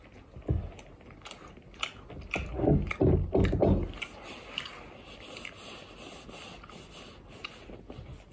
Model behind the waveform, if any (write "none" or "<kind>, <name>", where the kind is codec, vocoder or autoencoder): none